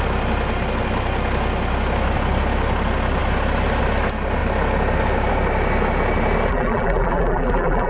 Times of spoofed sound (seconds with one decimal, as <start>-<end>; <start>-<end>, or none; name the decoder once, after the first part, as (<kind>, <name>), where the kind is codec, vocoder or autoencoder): 6.5-7.9 (vocoder, BigVGAN v2)